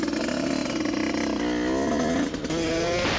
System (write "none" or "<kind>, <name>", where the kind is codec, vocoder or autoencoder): none